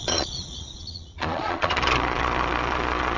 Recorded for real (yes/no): no